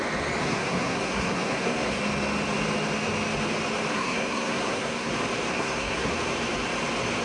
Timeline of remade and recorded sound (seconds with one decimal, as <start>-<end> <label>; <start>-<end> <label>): 0.0-0.4 recorded; 0.4-2.0 remade; 2.0-3.9 recorded; 3.9-5.1 remade; 5.1-5.5 recorded; 5.5-6.1 remade; 6.1-7.2 recorded